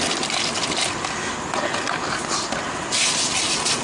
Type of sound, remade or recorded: recorded